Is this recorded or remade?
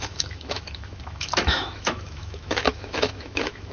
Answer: remade